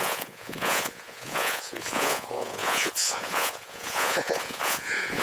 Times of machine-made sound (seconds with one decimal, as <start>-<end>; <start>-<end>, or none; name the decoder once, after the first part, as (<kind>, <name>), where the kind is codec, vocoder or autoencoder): 0.0-5.2 (vocoder, Vocos)